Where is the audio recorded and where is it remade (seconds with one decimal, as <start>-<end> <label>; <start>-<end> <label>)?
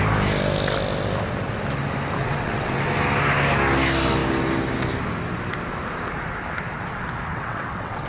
0.0-2.2 recorded; 2.2-2.8 remade; 2.8-7.3 recorded; 7.3-8.1 remade